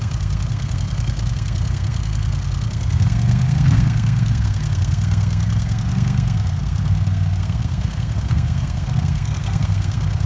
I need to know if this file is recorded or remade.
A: remade